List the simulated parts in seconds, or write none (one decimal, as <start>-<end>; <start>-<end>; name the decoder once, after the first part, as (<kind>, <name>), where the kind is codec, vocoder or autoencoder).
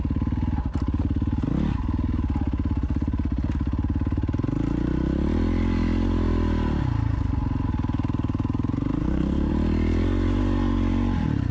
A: 9.0-9.5 (codec, SNAC)